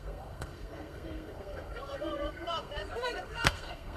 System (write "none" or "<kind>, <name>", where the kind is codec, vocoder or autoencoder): codec, SNAC